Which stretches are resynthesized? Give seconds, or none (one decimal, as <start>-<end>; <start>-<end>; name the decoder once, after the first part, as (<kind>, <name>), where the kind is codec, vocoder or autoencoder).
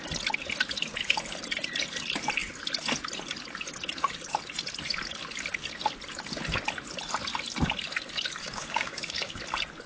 8.4-9.4 (codec, DAC)